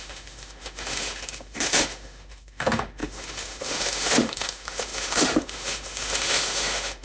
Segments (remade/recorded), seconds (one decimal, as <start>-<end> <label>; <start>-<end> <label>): 0.0-7.0 remade